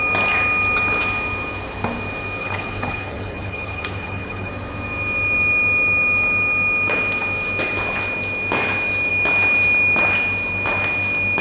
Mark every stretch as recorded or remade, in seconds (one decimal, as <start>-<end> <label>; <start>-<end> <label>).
0.0-2.4 recorded; 2.4-4.5 remade; 4.5-11.4 recorded